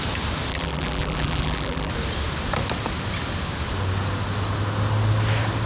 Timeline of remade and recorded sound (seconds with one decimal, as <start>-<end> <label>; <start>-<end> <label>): 0.0-0.5 recorded; 0.5-1.9 remade; 1.9-5.7 recorded